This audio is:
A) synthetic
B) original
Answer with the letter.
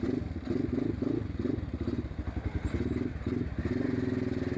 B